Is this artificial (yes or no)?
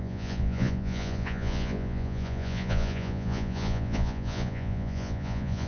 yes